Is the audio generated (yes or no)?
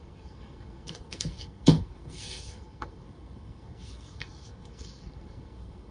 yes